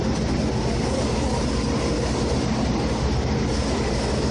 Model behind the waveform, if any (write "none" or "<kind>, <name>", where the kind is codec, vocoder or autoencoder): none